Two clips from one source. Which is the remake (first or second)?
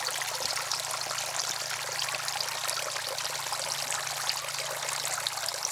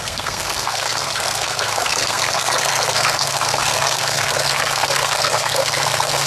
second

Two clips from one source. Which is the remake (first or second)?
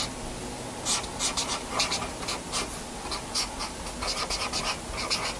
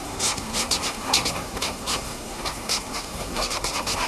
second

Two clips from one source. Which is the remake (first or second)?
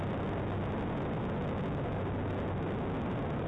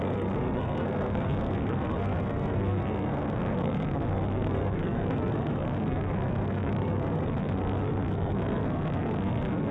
second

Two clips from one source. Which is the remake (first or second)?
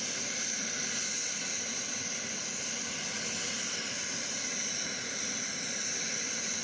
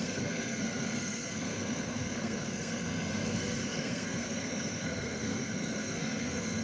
second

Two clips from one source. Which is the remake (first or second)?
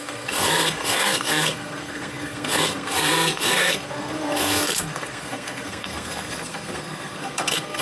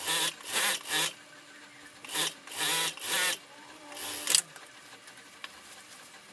first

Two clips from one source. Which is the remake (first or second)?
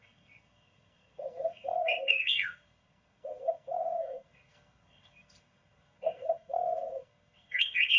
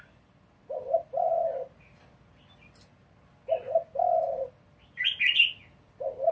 first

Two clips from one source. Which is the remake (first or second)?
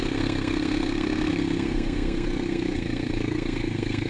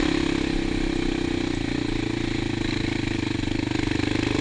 first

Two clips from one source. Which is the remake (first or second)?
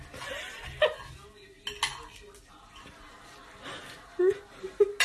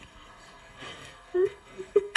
second